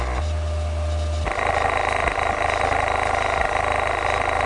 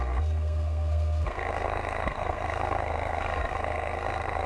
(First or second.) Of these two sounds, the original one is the first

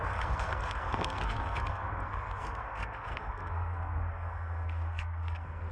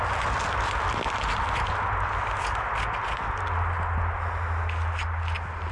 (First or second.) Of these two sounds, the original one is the second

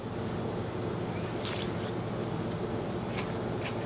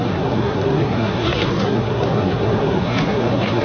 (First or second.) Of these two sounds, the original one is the first